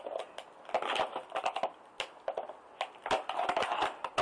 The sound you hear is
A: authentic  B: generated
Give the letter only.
A